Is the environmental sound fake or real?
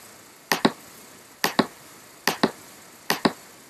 real